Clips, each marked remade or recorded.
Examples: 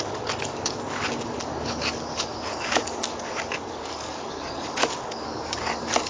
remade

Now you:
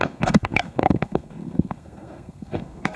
remade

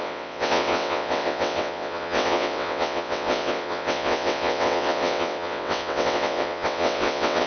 remade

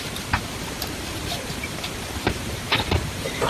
remade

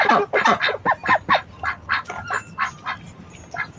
recorded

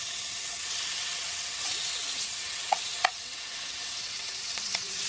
remade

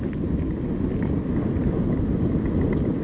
recorded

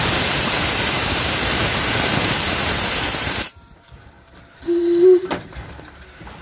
remade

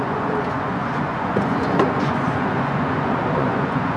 remade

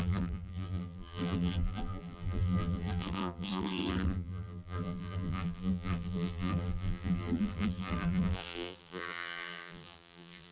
remade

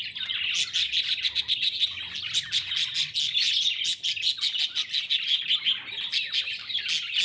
recorded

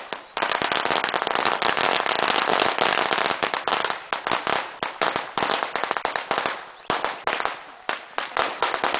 recorded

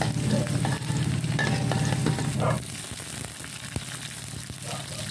recorded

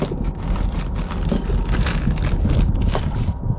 recorded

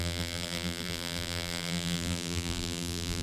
remade